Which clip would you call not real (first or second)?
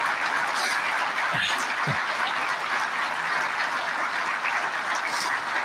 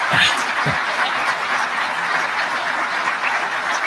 second